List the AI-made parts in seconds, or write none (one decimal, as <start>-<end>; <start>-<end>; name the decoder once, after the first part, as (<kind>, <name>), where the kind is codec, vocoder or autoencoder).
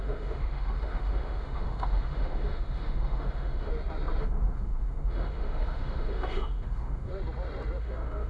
0.0-3.7 (autoencoder, DAC-VAE); 4.2-7.1; 7.8-8.3